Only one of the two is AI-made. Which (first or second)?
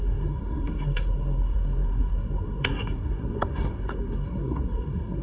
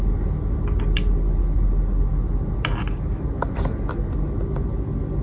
first